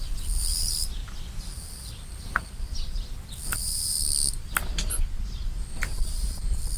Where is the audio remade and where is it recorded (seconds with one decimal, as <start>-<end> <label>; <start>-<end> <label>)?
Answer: 0.0-1.0 remade; 1.0-2.6 recorded; 2.6-6.8 remade